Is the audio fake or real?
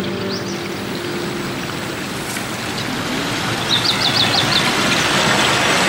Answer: real